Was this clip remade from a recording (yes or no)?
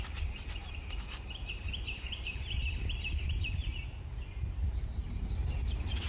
yes